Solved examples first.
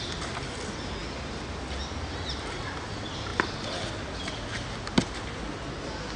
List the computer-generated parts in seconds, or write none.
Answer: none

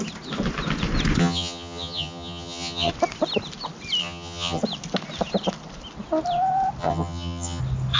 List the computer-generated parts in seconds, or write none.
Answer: 1.2-2.9 (vocoder, HiFi-GAN); 4.0-4.6; 6.8-7.6

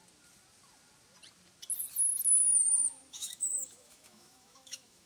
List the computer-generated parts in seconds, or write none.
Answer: 3.1-5.1 (autoencoder, DAC-VAE)

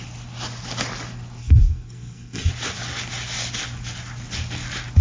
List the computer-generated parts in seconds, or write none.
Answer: 1.4-2.5 (codec, SNAC)

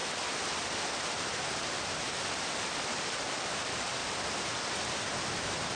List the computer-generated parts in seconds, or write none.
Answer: 1.2-4.0 (vocoder, BigVGAN v2); 5.3-5.8